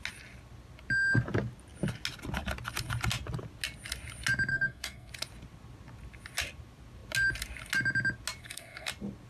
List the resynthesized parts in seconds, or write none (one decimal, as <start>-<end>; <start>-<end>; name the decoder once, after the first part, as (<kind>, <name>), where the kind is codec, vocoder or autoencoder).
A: 4.5-5.1 (codec, SNAC); 8.4-8.9